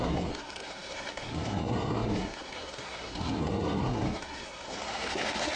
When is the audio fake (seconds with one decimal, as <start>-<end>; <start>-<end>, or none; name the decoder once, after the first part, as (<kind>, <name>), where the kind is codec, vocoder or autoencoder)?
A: 0.0-5.6 (codec, SNAC)